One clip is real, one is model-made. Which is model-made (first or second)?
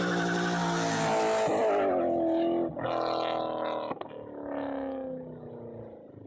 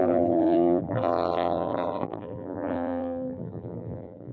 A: second